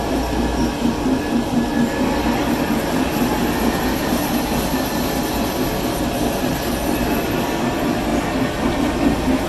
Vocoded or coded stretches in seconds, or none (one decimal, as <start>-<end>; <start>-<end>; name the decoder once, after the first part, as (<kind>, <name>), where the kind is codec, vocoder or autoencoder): none